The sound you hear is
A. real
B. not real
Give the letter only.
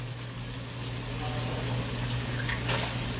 A